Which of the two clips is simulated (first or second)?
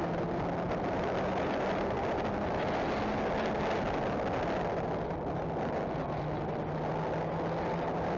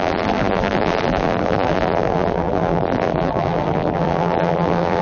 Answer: second